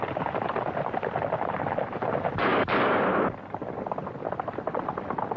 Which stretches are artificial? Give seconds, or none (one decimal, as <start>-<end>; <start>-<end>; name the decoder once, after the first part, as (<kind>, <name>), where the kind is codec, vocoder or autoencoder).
none